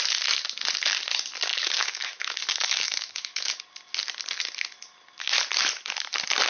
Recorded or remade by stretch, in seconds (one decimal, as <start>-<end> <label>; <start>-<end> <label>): 0.0-1.5 recorded; 1.5-3.6 remade; 3.6-6.5 recorded